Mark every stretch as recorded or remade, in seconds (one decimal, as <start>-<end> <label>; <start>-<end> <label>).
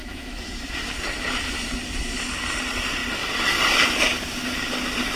0.0-0.9 remade; 0.9-5.2 recorded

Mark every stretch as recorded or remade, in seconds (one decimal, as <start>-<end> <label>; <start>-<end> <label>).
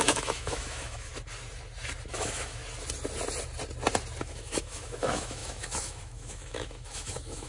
0.0-1.1 remade; 1.1-2.1 recorded; 2.1-2.6 remade; 2.6-4.2 recorded; 4.2-7.5 remade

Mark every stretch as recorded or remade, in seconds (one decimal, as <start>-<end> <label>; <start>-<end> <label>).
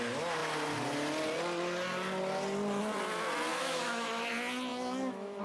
0.0-3.5 recorded; 3.5-4.3 remade; 4.3-4.7 recorded; 4.7-5.4 remade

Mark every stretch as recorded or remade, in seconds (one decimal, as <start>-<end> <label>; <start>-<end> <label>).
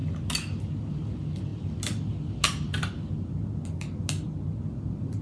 0.0-5.2 recorded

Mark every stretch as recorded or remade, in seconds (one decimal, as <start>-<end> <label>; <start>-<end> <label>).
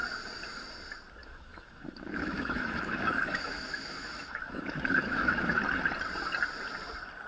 0.0-1.2 recorded; 1.2-5.6 remade; 5.6-7.3 recorded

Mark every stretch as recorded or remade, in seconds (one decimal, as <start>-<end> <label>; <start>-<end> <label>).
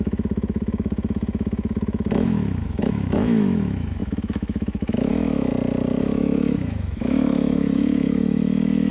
0.0-5.5 remade; 5.5-6.0 recorded; 6.0-8.9 remade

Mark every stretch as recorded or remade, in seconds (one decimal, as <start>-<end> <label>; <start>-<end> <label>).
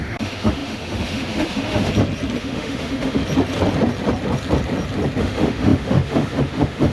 0.0-1.9 remade; 1.9-2.4 recorded; 2.4-3.2 remade; 3.2-5.2 recorded; 5.2-6.9 remade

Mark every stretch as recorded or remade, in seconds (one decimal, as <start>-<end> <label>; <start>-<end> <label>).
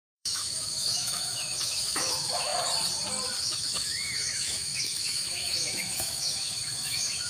0.0-2.5 remade; 2.5-3.4 recorded; 3.4-7.3 remade